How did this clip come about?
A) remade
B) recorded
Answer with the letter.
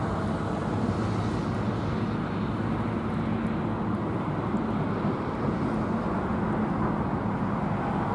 B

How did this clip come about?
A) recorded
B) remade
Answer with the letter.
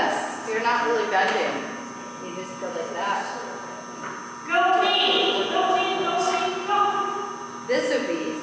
A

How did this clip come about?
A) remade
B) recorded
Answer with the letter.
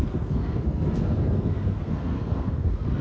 A